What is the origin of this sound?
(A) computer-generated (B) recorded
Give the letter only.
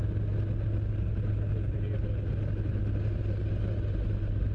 B